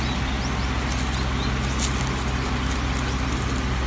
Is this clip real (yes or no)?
yes